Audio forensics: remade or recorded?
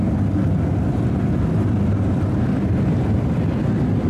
remade